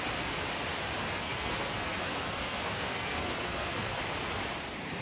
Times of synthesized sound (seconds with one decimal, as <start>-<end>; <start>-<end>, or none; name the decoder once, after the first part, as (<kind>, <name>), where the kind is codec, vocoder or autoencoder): 1.0-4.0 (codec, SNAC)